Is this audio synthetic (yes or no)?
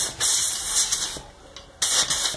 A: no